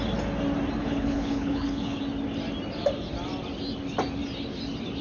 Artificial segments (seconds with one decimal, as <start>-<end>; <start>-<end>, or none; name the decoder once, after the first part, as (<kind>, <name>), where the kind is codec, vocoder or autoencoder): 0.8-2.0 (codec, HILCodec)

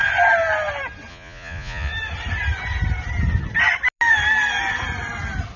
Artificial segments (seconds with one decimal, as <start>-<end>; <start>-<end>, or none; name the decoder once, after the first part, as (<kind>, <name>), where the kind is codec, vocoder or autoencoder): 1.1-1.9 (vocoder, Vocos)